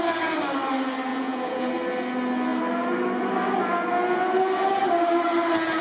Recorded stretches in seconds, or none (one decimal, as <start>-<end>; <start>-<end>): 0.0-1.1; 1.7-5.8